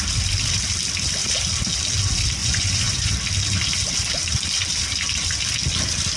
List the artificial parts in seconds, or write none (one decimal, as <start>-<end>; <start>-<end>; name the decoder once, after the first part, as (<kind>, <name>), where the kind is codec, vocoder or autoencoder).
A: 2.4-3.1 (vocoder, Vocos)